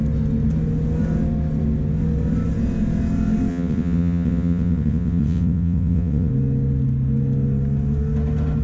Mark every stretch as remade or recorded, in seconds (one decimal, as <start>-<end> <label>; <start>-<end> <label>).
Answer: 0.0-3.5 recorded; 3.5-6.3 remade; 6.3-8.6 recorded